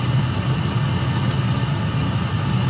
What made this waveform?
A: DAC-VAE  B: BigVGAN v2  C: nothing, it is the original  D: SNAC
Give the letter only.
C